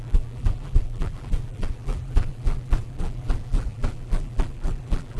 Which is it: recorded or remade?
remade